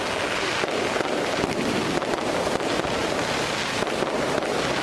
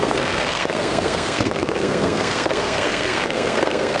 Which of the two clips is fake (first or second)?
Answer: second